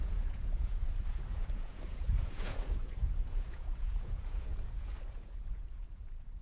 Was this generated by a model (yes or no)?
yes